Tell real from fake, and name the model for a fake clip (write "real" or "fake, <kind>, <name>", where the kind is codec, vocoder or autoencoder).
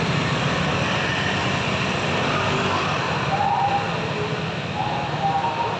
real